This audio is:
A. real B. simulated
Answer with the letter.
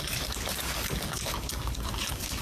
B